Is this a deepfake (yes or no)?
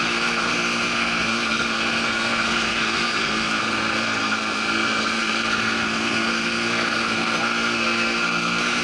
yes